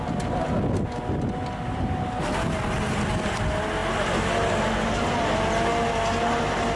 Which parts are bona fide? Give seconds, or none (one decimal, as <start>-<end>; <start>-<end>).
0.0-6.8